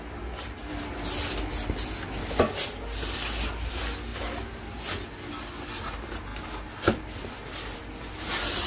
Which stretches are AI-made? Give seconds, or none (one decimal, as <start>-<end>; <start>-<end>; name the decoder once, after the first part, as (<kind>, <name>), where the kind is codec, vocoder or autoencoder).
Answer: none